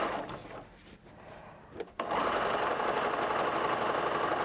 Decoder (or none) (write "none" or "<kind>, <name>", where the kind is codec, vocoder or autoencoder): none